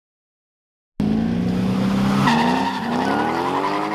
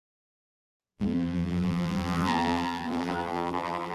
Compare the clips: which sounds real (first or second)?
first